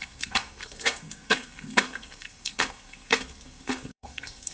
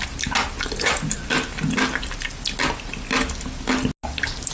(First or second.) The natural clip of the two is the second